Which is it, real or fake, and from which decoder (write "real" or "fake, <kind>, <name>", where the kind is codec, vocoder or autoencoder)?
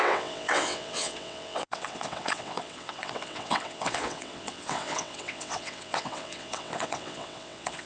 fake, vocoder, WaveNeXt